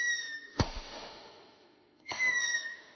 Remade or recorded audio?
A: remade